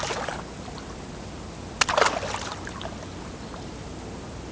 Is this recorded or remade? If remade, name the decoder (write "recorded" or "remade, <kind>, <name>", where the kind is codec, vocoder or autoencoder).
recorded